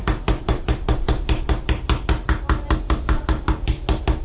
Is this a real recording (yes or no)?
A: yes